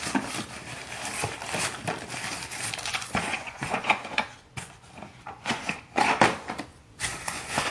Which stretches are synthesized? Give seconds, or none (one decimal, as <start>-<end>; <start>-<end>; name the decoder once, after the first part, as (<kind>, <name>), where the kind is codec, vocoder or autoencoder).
2.9-6.1 (vocoder, Vocos); 6.7-7.7